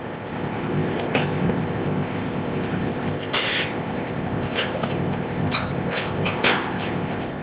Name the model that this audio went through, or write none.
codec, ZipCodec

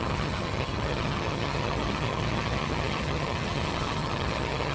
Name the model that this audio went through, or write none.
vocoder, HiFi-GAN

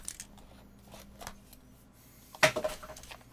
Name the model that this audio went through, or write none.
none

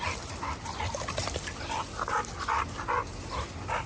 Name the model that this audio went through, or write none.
none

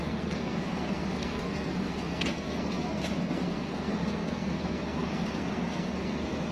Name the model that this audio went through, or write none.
codec, SNAC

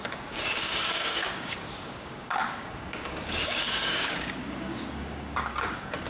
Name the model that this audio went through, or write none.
codec, DAC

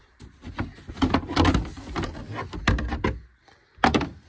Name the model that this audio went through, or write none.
none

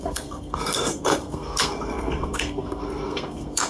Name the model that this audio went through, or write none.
codec, SNAC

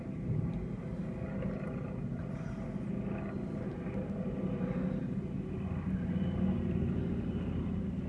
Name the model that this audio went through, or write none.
none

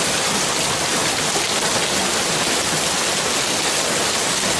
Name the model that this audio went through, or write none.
none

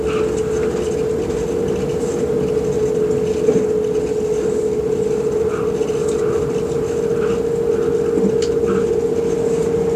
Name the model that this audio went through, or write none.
none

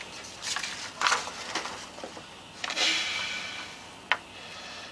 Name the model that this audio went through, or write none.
none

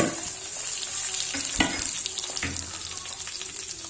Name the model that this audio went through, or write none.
none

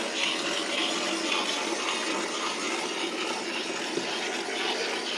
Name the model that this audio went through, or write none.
none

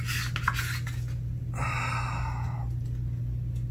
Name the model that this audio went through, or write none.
none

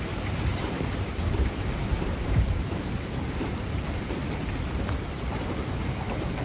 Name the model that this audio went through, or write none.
vocoder, BigVGAN v2